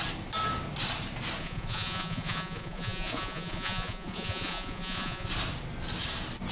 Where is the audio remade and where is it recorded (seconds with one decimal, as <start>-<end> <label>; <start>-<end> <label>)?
0.0-1.4 recorded; 1.4-5.3 remade; 5.3-6.5 recorded